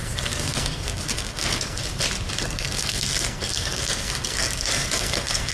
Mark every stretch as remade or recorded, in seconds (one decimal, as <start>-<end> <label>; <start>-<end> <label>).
0.0-1.8 remade; 1.8-2.4 recorded; 2.4-5.5 remade

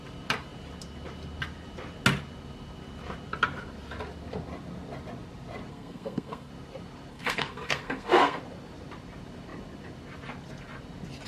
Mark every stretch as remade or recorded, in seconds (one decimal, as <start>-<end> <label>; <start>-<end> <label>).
0.0-5.7 recorded; 5.7-6.5 remade; 6.5-7.1 recorded; 7.1-8.4 remade; 8.4-11.3 recorded

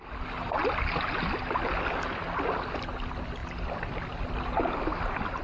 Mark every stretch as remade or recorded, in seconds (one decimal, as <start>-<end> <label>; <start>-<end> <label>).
0.0-5.4 recorded